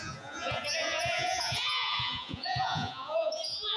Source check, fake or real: fake